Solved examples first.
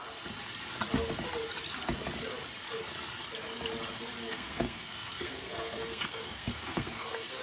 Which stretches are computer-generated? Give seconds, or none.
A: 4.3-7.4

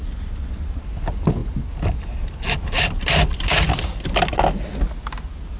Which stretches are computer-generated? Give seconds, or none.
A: none